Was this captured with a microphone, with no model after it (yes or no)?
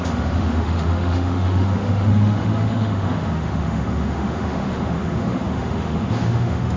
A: no